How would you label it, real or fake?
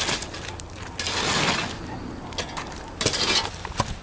real